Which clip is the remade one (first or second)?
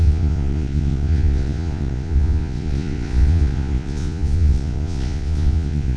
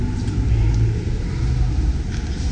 first